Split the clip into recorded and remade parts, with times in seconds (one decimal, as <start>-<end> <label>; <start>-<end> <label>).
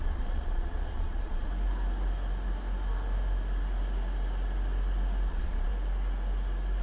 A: 0.0-1.5 remade; 1.5-5.3 recorded; 5.3-5.7 remade; 5.7-6.8 recorded